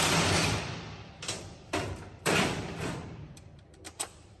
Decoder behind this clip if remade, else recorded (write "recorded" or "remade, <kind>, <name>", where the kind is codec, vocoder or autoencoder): remade, vocoder, BigVGAN v2